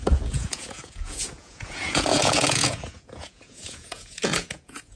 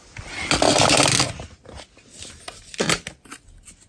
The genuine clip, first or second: second